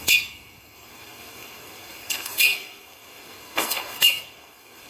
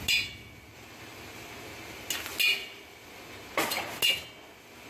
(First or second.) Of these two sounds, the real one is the second